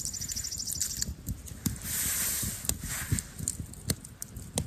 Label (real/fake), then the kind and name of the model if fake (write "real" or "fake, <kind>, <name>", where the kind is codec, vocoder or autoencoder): real